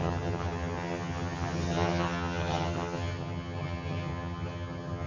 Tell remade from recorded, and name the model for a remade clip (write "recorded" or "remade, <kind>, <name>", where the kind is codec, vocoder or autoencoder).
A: remade, vocoder, HiFi-GAN